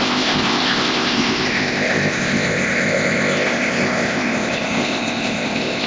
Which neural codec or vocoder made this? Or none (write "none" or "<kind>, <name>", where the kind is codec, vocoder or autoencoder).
codec, ZipCodec